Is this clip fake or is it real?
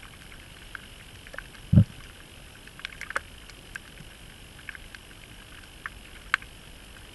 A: real